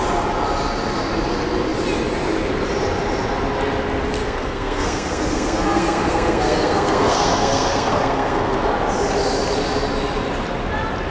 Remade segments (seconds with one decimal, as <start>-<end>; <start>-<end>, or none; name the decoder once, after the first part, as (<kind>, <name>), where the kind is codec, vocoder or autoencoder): 4.2-8.7 (codec, SNAC)